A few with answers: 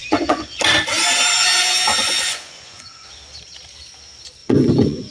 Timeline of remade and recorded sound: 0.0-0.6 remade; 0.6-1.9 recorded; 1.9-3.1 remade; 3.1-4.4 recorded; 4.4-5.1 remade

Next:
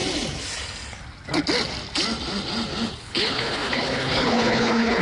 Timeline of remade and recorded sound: 0.0-3.0 recorded; 3.0-5.0 remade

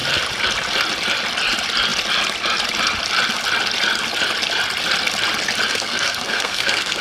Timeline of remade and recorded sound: 0.0-5.7 recorded; 5.7-7.0 remade

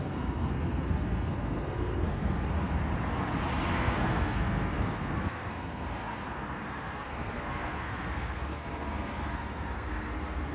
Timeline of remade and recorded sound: 0.0-2.8 remade; 2.8-3.7 recorded; 3.7-10.5 remade

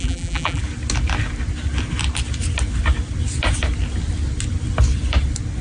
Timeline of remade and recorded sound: 0.0-0.6 remade; 0.6-5.6 recorded

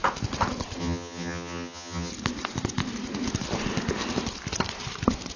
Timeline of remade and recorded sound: 0.0-0.8 recorded; 0.8-2.1 remade; 2.1-5.4 recorded